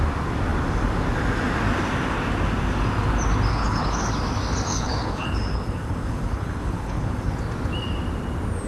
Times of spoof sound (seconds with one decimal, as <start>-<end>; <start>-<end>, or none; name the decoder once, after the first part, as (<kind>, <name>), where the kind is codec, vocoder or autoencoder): 3.5-4.1 (codec, HILCodec); 4.7-7.3